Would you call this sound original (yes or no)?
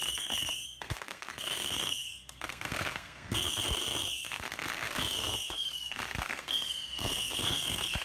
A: no